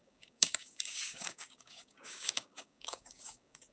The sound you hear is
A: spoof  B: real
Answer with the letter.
A